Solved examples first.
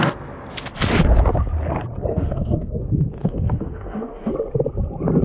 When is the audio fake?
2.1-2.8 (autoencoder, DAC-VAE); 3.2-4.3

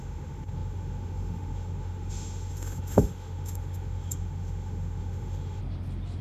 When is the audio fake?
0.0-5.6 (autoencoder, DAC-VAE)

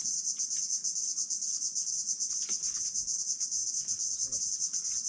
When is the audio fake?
none

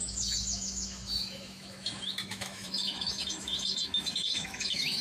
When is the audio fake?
0.0-5.0 (autoencoder, DAC-VAE)

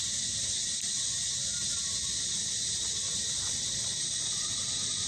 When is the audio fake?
none

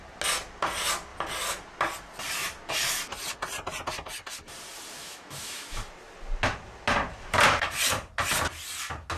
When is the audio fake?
5.0-5.9 (autoencoder, DAC-VAE)